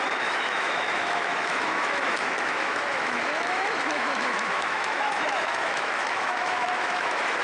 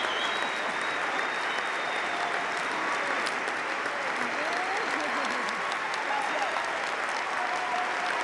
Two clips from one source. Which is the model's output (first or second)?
first